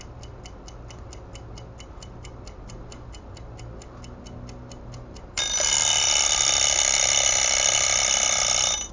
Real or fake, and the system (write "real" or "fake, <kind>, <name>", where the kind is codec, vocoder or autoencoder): real